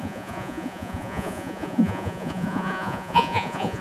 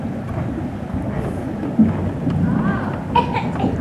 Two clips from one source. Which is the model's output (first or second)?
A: first